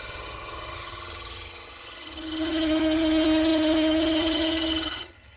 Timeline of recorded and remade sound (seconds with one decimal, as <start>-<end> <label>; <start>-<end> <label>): 0.0-5.4 remade